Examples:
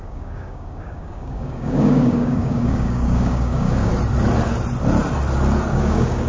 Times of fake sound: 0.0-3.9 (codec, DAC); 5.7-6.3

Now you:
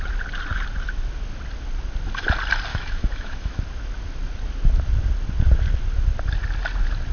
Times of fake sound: 2.7-3.6 (autoencoder, DAC-VAE)